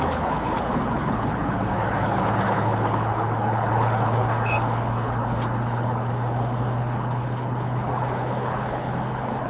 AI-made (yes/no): yes